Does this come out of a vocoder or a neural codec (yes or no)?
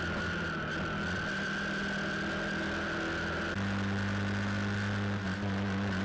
no